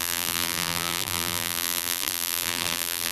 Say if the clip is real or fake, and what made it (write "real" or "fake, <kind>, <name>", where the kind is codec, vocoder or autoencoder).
fake, vocoder, BigVGAN v2